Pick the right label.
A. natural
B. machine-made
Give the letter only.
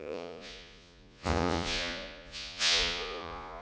B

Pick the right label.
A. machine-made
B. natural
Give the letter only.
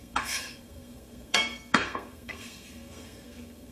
A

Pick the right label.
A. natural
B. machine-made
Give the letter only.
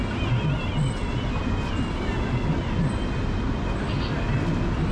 A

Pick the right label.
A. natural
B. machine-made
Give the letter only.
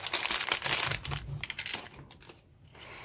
A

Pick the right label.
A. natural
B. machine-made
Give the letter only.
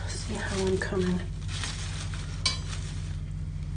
A